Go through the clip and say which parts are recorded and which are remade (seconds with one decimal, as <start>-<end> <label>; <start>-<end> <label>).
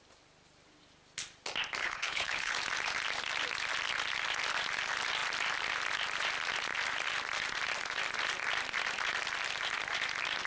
0.0-1.8 recorded; 1.8-2.5 remade; 2.5-10.5 recorded